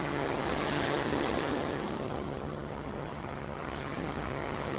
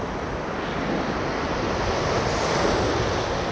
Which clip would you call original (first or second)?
second